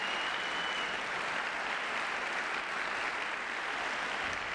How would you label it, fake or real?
real